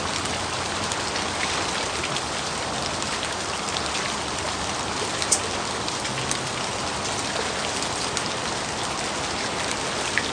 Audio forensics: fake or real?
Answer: real